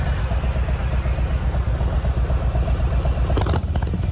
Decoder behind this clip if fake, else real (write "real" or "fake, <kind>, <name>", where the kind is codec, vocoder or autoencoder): real